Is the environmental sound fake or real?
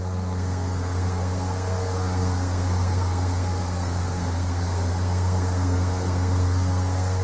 fake